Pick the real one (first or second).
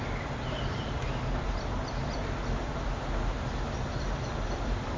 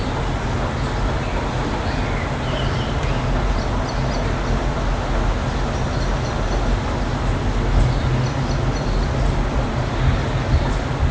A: second